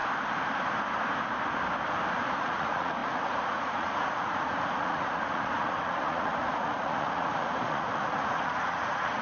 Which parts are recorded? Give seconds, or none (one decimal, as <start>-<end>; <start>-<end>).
0.0-2.3